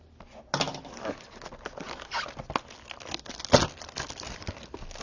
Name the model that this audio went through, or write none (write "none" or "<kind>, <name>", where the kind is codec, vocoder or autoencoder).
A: none